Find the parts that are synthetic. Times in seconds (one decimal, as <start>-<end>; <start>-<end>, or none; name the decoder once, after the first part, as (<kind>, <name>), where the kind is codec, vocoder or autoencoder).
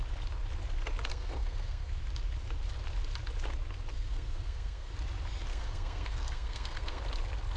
1.1-2.0 (codec, SNAC); 3.9-4.9; 5.5-7.0